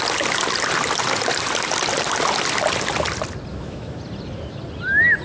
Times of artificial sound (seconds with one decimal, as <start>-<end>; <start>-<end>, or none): 3.5-4.0